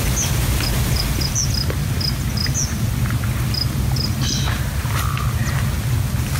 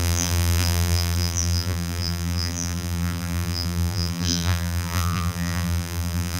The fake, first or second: second